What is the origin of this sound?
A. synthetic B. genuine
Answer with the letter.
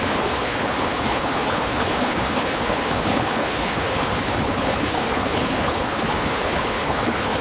A